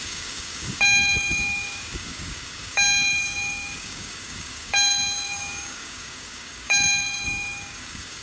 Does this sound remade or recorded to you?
remade